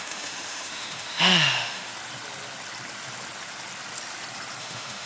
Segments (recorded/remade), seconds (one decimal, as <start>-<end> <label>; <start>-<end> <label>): 0.0-1.9 remade; 1.9-4.6 recorded; 4.6-5.1 remade